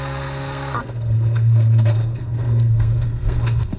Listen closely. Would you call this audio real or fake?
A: fake